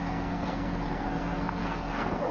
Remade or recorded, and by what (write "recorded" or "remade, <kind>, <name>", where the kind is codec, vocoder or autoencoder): remade, codec, SNAC